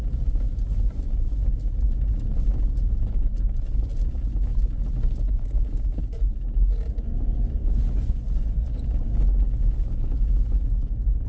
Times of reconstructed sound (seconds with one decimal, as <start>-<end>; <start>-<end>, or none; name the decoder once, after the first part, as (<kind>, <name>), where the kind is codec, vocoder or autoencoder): none